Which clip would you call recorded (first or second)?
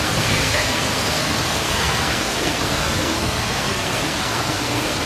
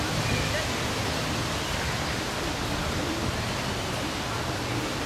second